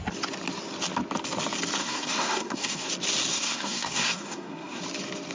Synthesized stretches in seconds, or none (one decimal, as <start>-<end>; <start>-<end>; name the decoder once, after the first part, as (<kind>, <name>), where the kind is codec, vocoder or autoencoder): 1.8-2.9 (codec, SNAC); 3.3-4.8